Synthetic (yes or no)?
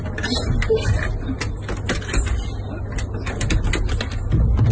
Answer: no